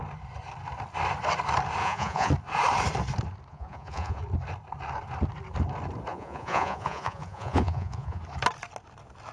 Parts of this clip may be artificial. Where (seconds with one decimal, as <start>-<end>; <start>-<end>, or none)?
1.8-2.3; 3.5-4.2; 6.1-8.2